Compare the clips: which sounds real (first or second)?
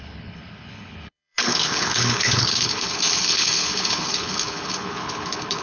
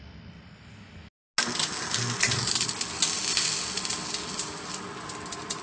second